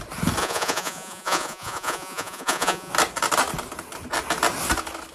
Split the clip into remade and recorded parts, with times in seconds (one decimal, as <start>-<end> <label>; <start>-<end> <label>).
0.0-0.4 recorded; 0.4-2.9 remade; 2.9-5.1 recorded